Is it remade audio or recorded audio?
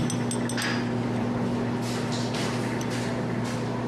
recorded